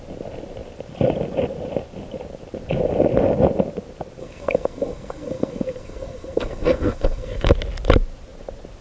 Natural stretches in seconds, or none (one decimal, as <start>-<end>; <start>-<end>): 0.0-4.2; 7.5-8.8